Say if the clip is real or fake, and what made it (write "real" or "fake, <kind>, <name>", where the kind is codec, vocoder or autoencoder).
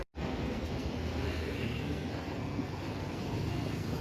fake, codec, SNAC